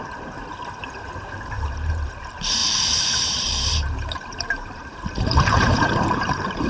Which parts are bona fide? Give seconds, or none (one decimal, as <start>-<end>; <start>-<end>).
none